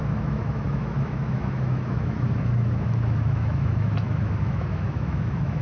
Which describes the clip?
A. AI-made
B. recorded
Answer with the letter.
A